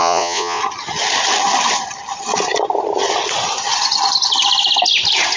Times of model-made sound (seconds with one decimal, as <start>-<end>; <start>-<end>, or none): 0.0-0.6